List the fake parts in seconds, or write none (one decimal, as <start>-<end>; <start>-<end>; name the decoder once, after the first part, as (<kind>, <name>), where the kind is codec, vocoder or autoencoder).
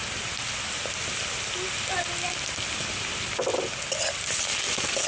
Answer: none